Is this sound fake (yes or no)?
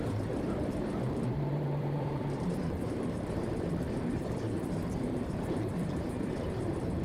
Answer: yes